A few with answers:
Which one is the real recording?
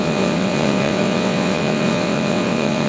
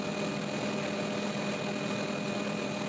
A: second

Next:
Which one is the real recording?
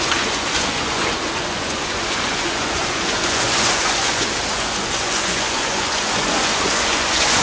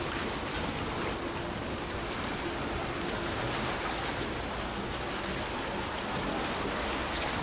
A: second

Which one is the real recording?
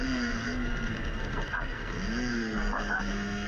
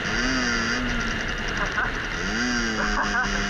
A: second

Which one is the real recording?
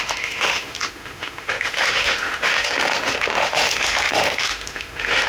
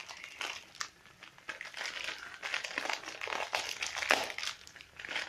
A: second